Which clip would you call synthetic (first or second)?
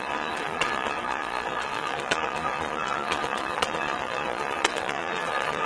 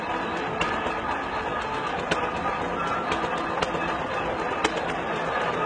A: first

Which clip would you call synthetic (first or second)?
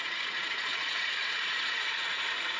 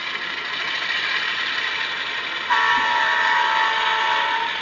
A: first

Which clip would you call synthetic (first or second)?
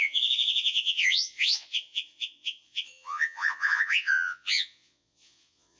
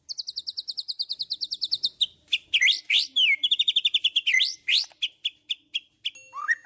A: first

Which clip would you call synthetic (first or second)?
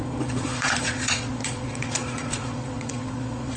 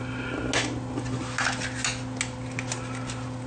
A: first